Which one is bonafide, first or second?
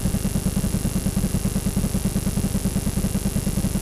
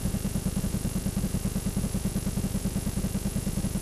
first